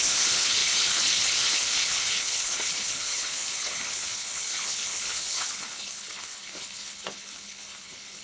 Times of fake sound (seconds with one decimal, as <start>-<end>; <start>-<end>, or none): 0.0-8.2